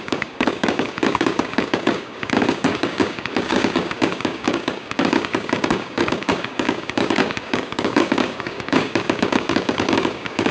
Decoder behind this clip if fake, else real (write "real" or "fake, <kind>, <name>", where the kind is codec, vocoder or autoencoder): fake, codec, DAC